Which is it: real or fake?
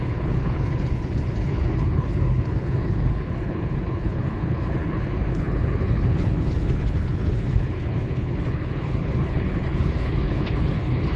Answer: fake